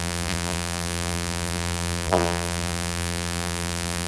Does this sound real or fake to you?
fake